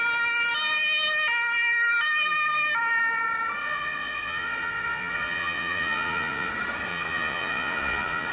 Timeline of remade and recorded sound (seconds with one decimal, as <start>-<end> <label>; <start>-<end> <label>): 0.0-3.6 recorded; 3.6-6.5 remade; 6.5-6.9 recorded; 6.9-8.3 remade